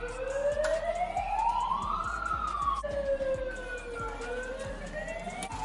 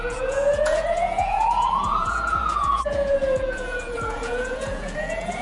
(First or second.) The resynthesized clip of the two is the second